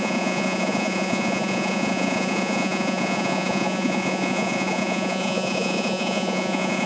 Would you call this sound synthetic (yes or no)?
yes